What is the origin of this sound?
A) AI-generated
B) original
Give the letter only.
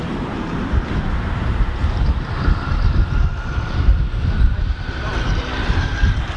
A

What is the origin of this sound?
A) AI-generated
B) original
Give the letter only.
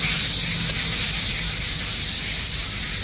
B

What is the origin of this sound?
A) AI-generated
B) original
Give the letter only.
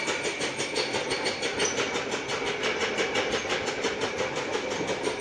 B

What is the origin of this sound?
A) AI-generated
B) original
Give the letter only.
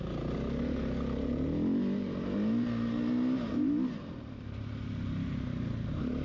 B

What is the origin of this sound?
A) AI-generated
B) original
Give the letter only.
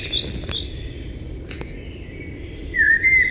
A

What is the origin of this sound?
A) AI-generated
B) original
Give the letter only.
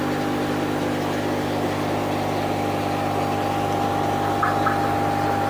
B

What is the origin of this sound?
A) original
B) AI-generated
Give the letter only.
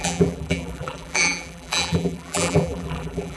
B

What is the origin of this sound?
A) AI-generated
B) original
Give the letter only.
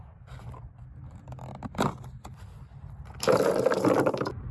B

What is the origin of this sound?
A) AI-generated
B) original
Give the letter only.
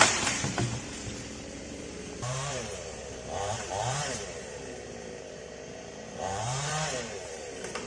A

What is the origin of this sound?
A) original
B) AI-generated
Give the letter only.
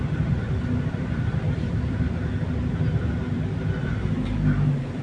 B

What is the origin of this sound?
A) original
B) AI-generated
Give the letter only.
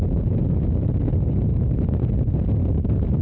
A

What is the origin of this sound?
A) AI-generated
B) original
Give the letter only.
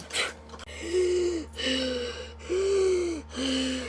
B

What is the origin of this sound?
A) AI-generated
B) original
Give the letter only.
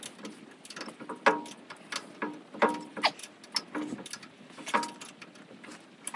B